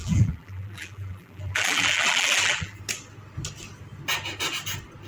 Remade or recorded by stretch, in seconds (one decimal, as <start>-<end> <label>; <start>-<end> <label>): 0.0-2.8 remade; 2.8-5.1 recorded